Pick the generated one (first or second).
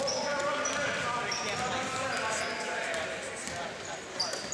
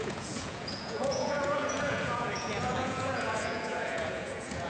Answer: second